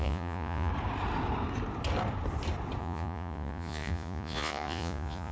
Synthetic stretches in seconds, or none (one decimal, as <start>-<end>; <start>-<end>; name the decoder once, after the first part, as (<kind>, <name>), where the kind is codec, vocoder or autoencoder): 0.0-0.7 (vocoder, Vocos); 2.8-5.3